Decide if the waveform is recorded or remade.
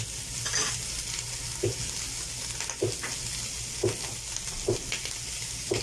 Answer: recorded